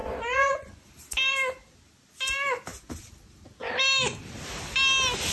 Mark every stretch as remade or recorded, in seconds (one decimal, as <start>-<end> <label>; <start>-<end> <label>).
0.0-0.9 remade; 0.9-5.3 recorded